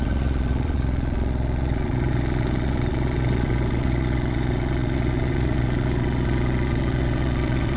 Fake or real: fake